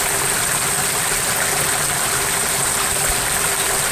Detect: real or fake real